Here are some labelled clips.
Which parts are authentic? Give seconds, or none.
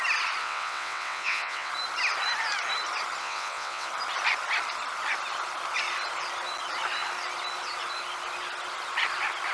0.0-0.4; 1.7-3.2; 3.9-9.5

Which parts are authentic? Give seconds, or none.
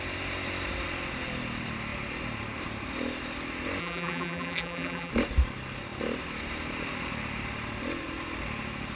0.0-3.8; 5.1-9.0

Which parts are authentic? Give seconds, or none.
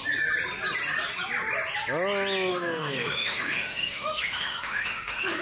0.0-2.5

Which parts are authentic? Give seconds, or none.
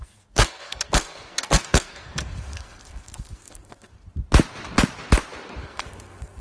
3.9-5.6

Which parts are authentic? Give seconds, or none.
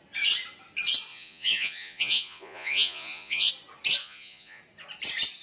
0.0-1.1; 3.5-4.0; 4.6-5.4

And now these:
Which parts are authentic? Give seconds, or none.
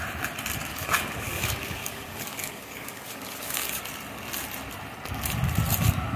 0.0-0.6; 3.8-6.2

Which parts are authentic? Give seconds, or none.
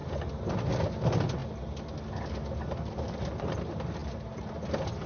0.0-5.1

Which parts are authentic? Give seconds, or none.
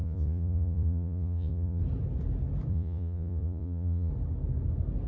1.8-2.7; 4.1-5.1